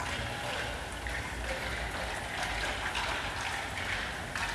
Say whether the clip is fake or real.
real